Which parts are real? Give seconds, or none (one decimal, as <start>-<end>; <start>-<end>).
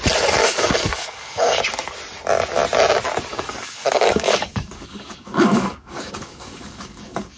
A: 0.0-0.4; 1.6-3.3